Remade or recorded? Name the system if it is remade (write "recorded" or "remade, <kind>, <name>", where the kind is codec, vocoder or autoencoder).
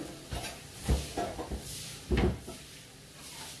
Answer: remade, vocoder, BigVGAN v2